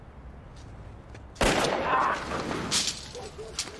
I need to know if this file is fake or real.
real